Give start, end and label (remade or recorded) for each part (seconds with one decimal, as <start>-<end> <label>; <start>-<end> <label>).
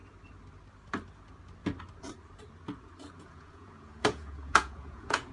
0.0-3.2 recorded; 3.2-5.3 remade